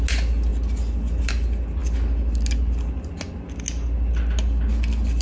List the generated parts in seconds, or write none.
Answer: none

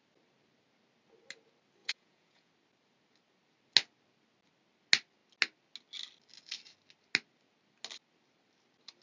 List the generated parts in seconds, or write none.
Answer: 1.8-2.5 (vocoder, Vocos)

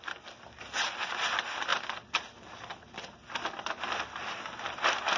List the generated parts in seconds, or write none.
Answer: none

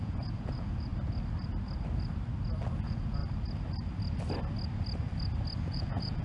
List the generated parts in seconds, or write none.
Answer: 0.0-0.9 (vocoder, Vocos); 2.7-3.2; 5.6-6.2

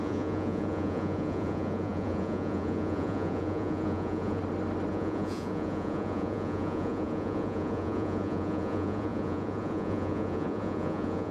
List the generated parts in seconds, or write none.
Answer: 0.0-4.4 (vocoder, Vocos); 4.9-11.3

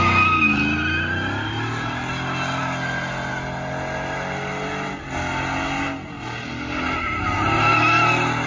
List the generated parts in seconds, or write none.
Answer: none

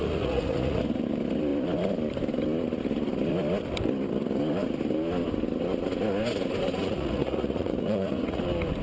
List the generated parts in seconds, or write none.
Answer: 0.0-0.8 (vocoder, Vocos); 6.8-8.4